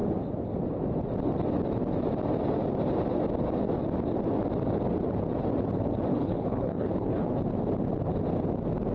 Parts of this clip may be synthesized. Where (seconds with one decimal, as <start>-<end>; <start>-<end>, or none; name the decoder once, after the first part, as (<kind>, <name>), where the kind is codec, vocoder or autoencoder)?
6.1-7.3 (codec, HILCodec)